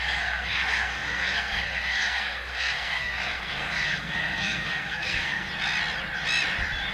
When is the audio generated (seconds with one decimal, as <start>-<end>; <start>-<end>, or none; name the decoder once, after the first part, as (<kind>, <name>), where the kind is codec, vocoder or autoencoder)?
0.0-5.5 (codec, SNAC)